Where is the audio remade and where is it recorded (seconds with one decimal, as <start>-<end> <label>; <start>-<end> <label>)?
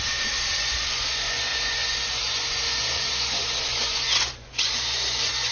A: 0.0-5.5 remade